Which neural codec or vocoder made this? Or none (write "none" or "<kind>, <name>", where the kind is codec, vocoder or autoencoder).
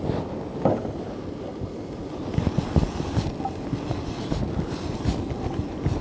none